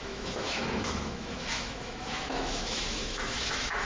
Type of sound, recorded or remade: remade